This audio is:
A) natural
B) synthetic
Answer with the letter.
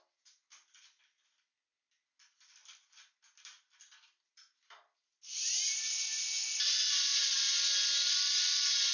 A